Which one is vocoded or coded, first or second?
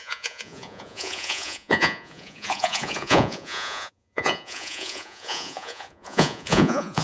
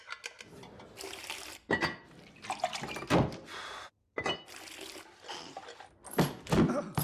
first